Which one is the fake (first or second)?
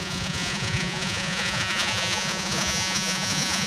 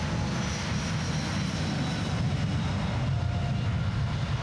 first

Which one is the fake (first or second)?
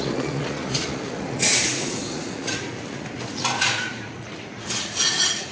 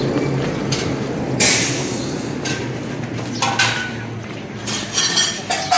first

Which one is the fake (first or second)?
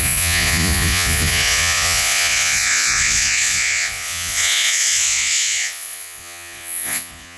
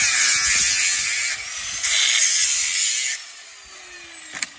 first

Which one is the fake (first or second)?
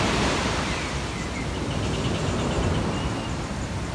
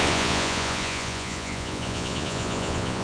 second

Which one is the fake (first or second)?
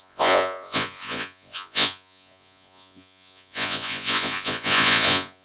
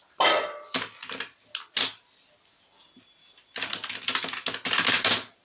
first